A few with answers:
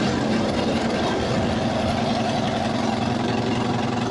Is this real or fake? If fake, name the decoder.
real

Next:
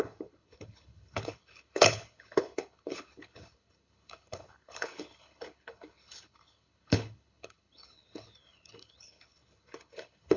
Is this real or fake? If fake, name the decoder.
fake, codec, HILCodec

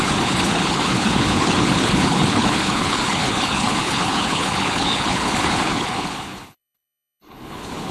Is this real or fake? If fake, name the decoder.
fake, codec, HILCodec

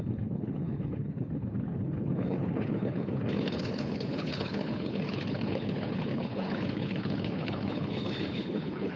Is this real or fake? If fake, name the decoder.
fake, codec, HILCodec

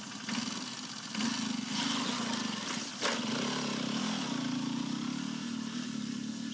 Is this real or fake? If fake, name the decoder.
real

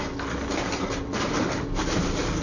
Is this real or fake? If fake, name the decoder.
real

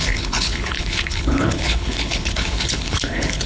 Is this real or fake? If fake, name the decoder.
fake, codec, HILCodec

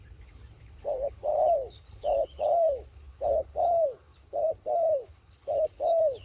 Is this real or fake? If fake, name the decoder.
fake, codec, HILCodec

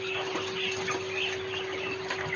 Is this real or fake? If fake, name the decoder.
real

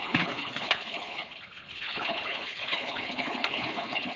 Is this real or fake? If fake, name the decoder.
fake, codec, HILCodec